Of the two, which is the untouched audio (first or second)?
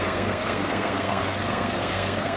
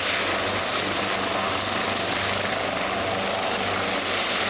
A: second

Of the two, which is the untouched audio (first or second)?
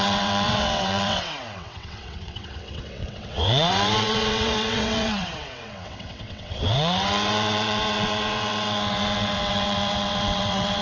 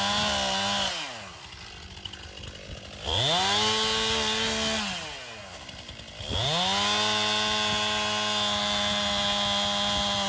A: second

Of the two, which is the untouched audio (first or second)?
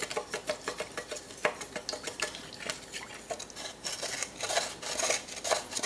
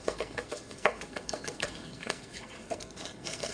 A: first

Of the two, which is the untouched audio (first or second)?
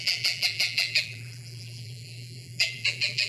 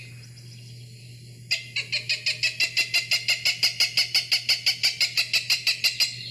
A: second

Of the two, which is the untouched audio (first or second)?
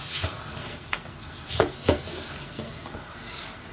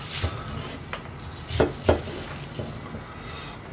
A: second